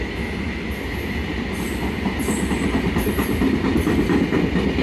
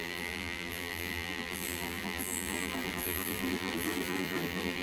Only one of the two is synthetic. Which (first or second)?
second